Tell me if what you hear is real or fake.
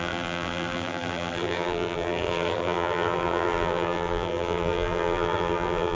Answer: fake